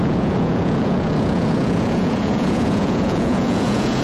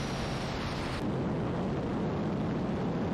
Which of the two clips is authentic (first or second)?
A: second